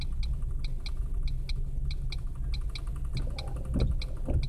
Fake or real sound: real